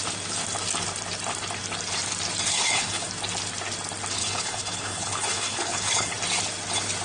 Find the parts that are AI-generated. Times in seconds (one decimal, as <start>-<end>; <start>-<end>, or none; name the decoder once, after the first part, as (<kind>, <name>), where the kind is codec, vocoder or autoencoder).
2.5-3.1 (codec, HILCodec); 4.2-6.1